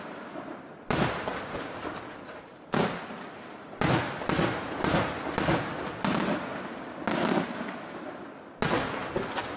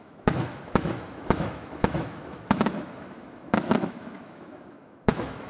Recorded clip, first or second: first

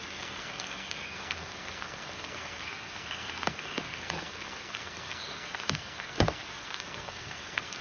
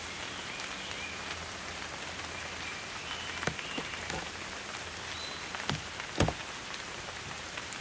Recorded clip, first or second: second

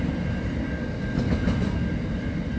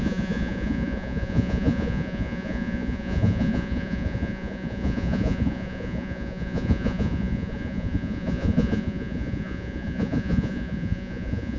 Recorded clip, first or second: first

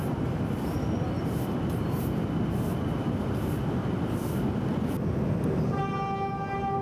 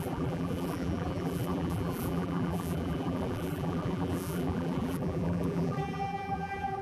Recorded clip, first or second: first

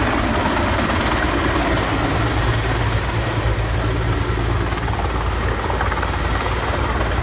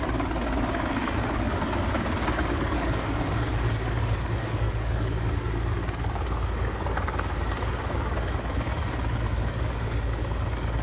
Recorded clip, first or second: first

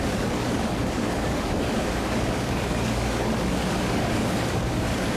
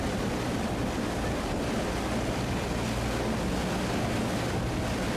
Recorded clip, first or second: second